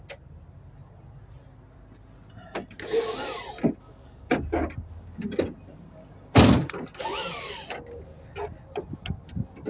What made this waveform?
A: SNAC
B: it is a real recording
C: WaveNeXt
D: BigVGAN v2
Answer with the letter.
B